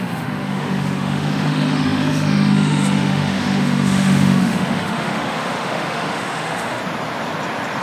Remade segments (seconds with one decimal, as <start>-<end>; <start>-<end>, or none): 0.0-6.8